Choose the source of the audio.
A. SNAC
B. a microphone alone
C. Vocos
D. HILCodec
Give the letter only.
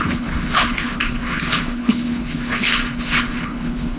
D